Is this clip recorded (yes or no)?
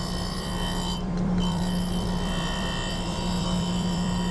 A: no